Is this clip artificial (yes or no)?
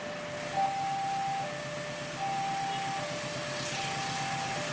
no